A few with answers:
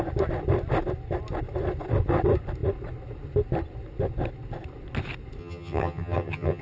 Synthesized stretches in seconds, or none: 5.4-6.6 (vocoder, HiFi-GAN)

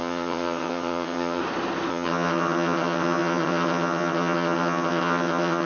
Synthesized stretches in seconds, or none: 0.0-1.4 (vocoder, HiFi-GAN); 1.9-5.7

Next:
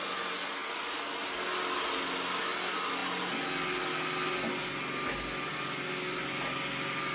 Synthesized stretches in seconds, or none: none

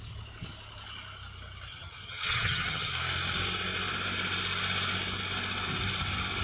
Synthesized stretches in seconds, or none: 1.7-2.9 (vocoder, HiFi-GAN)